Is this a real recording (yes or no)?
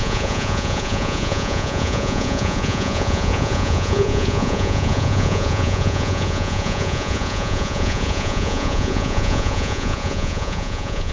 no